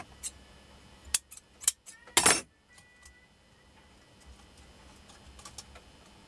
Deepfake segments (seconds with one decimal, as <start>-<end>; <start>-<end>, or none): none